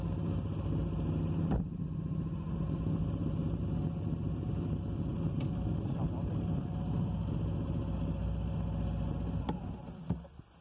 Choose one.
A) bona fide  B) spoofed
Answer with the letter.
A